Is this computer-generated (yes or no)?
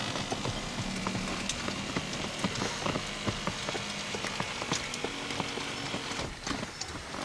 no